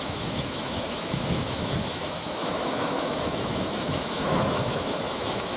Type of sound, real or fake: fake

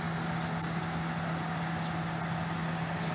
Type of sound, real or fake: real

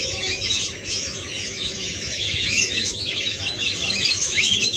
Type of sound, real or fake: fake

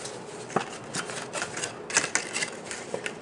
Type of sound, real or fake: real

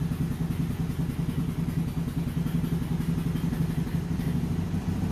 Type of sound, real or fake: real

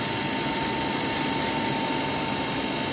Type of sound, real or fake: real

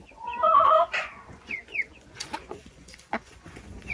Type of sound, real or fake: fake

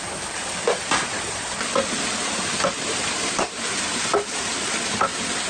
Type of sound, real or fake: real